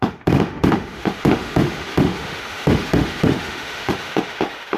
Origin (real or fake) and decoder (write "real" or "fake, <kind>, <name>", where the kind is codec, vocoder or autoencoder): fake, autoencoder, DAC-VAE